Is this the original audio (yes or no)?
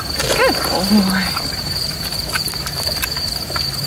yes